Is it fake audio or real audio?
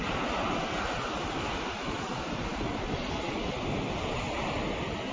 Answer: real